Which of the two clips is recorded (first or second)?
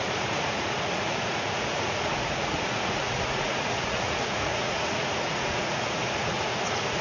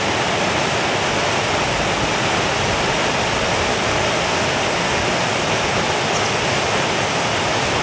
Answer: second